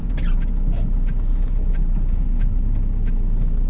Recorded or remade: recorded